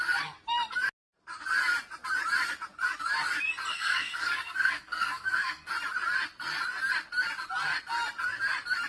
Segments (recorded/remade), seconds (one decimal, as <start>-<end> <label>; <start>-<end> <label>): 0.0-3.7 recorded; 3.7-5.7 remade; 5.7-8.9 recorded